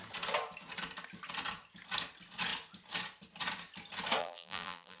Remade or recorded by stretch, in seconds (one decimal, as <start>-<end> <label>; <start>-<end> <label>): 0.0-4.2 recorded; 4.2-5.0 remade